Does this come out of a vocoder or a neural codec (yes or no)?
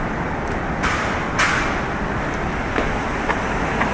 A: no